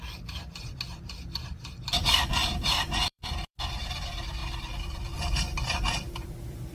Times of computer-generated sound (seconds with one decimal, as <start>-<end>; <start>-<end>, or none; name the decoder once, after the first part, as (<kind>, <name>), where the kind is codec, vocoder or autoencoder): 0.0-6.7 (vocoder, BigVGAN v2)